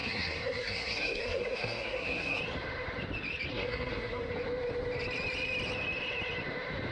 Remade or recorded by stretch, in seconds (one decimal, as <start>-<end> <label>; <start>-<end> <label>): 0.0-2.4 remade; 2.4-3.5 recorded; 3.5-4.3 remade; 4.3-6.9 recorded